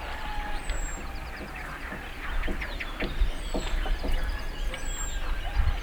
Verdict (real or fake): real